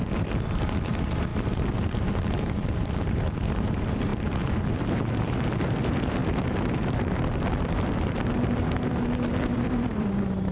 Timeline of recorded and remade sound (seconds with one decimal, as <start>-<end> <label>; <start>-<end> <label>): 0.0-10.5 remade